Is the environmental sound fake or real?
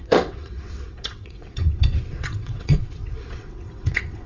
fake